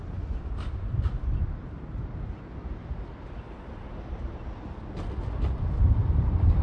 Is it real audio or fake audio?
fake